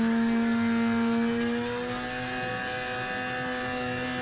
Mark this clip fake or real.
real